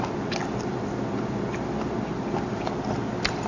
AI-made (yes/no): no